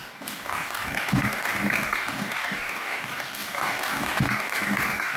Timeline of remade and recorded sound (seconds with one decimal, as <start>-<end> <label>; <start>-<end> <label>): 0.0-5.2 remade